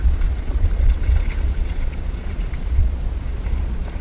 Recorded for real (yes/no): no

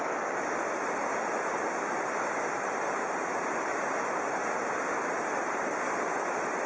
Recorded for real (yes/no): yes